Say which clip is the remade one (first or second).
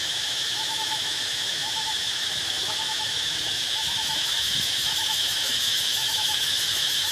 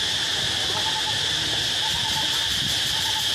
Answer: first